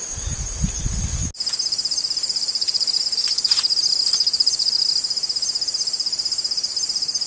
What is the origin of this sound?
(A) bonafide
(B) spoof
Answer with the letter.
A